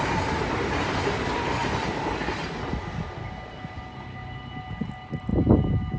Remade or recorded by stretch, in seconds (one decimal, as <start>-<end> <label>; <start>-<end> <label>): 0.0-6.0 recorded